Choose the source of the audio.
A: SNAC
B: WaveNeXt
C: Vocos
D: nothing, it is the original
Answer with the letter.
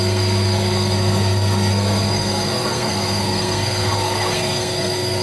A